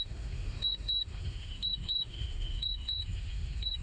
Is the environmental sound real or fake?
fake